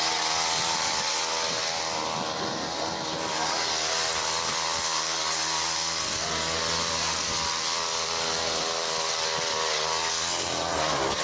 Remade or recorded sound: recorded